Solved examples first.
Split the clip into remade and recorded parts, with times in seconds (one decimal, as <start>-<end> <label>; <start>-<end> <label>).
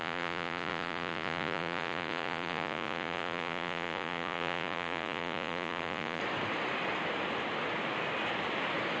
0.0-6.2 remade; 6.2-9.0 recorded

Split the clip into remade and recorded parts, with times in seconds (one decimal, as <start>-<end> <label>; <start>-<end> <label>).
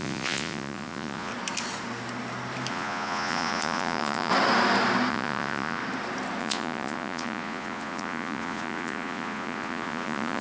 0.0-1.3 remade; 1.3-2.7 recorded; 2.7-4.3 remade; 4.3-5.1 recorded; 5.1-5.8 remade; 5.8-6.4 recorded; 6.4-10.4 remade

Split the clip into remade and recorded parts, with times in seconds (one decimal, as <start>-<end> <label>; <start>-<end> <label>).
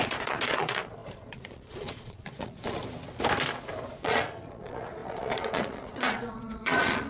0.0-2.8 remade; 2.8-3.9 recorded; 3.9-7.1 remade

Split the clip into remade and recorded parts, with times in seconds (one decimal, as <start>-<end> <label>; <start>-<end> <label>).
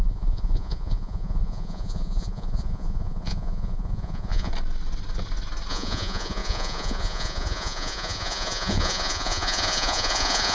0.0-4.5 remade; 4.5-5.7 recorded; 5.7-10.5 remade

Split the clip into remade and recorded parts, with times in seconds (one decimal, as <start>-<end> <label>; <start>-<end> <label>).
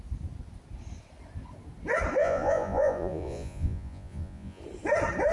0.0-2.2 recorded; 2.2-4.6 remade; 4.6-5.3 recorded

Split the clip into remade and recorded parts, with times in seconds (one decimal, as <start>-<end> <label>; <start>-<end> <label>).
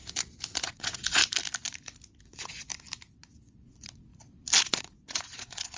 0.0-0.6 recorded; 0.6-1.2 remade; 1.2-2.2 recorded; 2.2-2.7 remade; 2.7-3.4 recorded; 3.4-4.1 remade; 4.1-4.6 recorded; 4.6-5.8 remade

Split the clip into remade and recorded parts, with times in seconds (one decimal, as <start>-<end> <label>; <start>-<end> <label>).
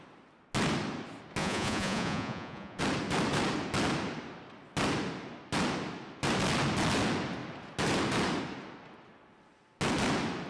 0.0-1.4 recorded; 1.4-2.8 remade; 2.8-10.5 recorded